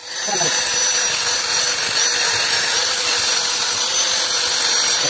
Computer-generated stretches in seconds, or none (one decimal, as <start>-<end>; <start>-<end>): none